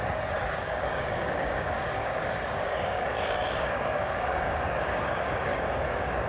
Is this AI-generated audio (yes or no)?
yes